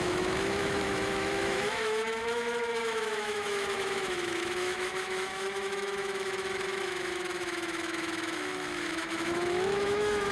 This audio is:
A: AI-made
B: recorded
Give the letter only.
A